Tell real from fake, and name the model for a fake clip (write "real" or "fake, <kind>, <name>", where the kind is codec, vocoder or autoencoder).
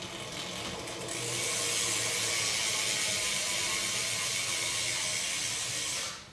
real